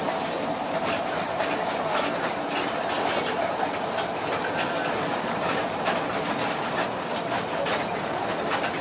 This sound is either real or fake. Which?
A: real